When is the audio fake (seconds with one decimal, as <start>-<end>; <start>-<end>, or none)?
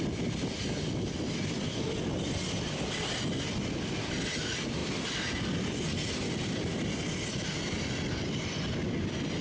none